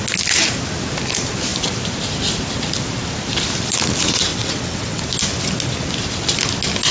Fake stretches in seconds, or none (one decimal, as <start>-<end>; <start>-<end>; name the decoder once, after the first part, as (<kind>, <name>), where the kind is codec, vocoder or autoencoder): 4.3-5.0 (vocoder, WaveNeXt)